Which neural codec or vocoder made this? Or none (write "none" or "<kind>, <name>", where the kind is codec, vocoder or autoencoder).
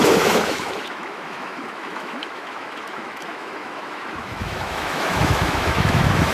autoencoder, DAC-VAE